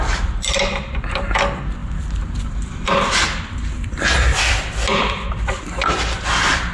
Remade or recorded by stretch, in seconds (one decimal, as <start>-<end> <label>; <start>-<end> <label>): 0.0-6.7 remade